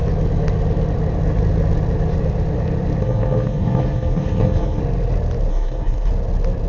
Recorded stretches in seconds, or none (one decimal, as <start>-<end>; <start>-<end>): 0.0-3.0; 4.8-5.5; 6.1-6.7